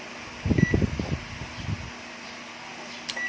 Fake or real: real